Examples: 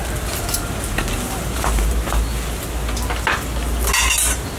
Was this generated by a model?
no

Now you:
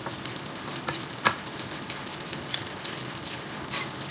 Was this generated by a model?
yes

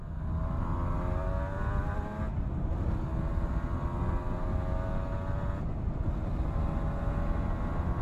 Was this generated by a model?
no